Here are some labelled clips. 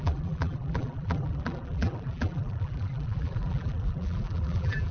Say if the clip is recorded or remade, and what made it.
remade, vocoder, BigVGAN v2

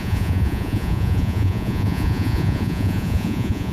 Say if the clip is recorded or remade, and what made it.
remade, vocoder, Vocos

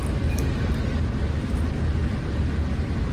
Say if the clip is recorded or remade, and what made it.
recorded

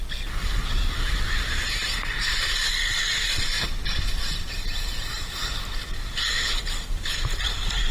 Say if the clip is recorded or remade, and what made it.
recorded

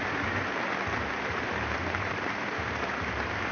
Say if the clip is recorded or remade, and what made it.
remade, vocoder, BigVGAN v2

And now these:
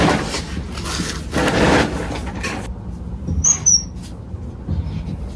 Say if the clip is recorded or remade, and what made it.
recorded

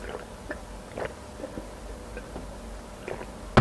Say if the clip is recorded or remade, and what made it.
recorded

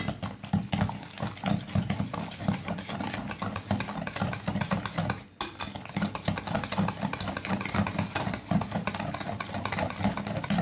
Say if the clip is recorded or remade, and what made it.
recorded